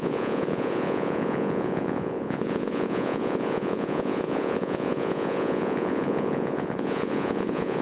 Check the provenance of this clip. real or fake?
fake